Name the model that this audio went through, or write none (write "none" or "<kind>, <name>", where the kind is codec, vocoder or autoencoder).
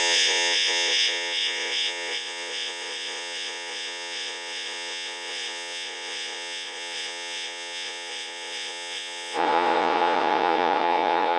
vocoder, Vocos